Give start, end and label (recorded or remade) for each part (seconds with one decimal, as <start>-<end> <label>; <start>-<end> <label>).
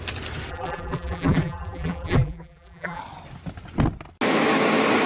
0.0-0.5 recorded; 0.5-3.0 remade; 3.0-5.1 recorded